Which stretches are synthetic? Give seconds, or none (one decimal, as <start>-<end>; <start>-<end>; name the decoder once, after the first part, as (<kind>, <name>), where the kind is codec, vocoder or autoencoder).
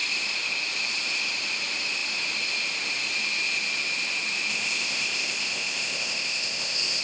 4.5-7.0 (codec, ZipCodec)